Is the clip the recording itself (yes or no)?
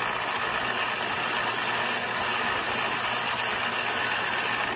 yes